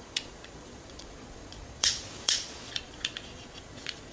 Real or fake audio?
fake